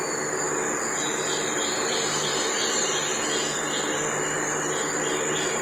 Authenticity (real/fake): real